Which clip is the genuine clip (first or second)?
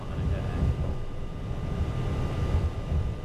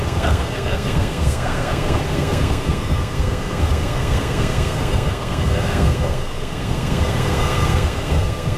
first